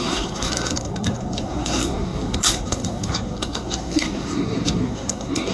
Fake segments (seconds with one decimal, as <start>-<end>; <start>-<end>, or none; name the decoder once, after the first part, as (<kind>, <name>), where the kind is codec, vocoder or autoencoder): 0.0-5.5 (codec, SNAC)